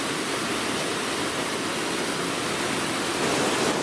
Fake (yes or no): no